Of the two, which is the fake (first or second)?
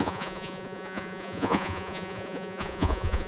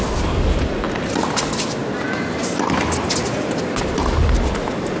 first